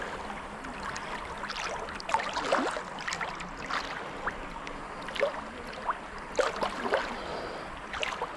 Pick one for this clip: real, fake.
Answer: real